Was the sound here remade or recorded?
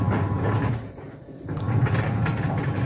remade